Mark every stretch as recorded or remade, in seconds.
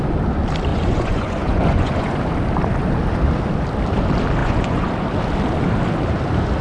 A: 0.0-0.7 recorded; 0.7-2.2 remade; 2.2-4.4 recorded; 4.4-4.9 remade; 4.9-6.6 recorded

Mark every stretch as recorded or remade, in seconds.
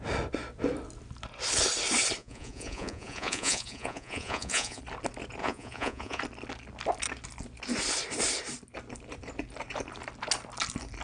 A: 0.0-2.2 recorded; 2.2-4.8 remade; 4.8-5.4 recorded; 5.4-6.2 remade; 6.2-11.0 recorded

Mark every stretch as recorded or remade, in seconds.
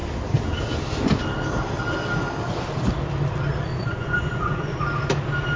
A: 0.0-3.7 recorded; 3.7-4.8 remade; 4.8-5.6 recorded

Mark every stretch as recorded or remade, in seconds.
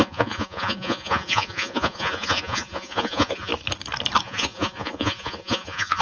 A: 0.0-3.5 remade; 3.5-4.2 recorded; 4.2-6.0 remade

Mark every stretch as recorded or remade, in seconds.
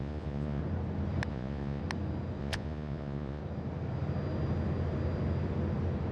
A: 0.0-0.6 remade; 0.6-1.3 recorded; 1.3-1.8 remade; 1.8-2.4 recorded; 2.4-3.4 remade; 3.4-6.1 recorded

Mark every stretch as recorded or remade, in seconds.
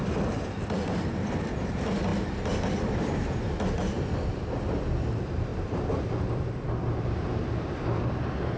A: 0.0-8.6 recorded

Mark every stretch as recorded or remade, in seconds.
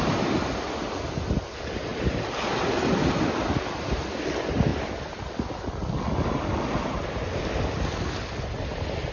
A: 0.0-9.1 recorded